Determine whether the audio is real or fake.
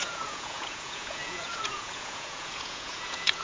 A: fake